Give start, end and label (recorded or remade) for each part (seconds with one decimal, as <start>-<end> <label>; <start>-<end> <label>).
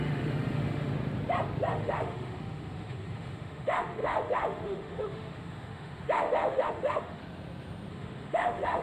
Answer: 0.0-0.9 remade; 0.9-1.7 recorded; 1.7-7.2 remade; 7.2-7.9 recorded; 7.9-8.8 remade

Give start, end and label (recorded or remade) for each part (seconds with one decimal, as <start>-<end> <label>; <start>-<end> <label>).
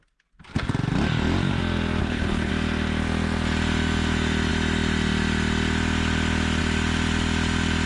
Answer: 0.0-2.0 recorded; 2.0-2.5 remade; 2.5-7.9 recorded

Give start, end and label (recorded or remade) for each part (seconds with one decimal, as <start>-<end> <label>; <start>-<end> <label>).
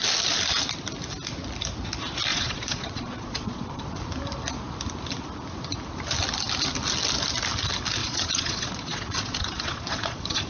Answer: 0.0-2.3 recorded; 2.3-3.8 remade; 3.8-8.0 recorded; 8.0-10.5 remade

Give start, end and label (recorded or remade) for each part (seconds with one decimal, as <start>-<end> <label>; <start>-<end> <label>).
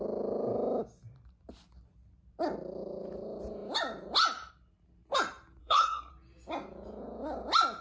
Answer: 0.0-5.6 recorded; 5.6-6.1 remade; 6.1-7.8 recorded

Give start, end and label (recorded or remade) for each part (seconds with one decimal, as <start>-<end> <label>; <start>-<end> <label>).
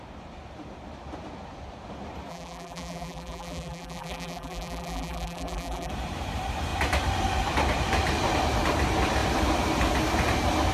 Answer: 0.0-2.3 recorded; 2.3-5.9 remade; 5.9-10.7 recorded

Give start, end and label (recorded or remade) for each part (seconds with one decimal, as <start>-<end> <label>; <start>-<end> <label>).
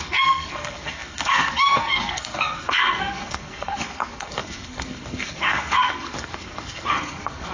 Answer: 0.0-7.5 remade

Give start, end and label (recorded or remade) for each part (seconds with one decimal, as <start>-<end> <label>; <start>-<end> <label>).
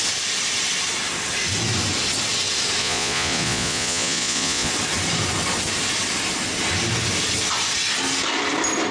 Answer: 0.0-2.8 recorded; 2.8-4.7 remade; 4.7-8.9 recorded